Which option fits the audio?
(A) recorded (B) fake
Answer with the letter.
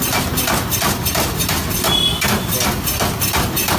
A